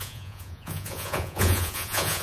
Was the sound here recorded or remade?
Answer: remade